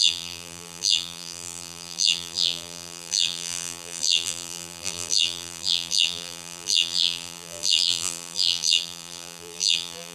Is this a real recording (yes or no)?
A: no